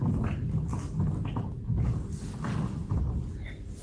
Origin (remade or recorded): recorded